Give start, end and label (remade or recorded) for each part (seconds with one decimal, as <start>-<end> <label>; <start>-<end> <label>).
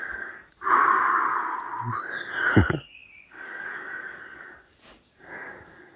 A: 0.0-1.4 remade; 1.4-2.7 recorded; 2.7-6.0 remade